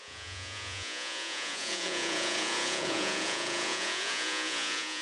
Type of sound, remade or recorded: remade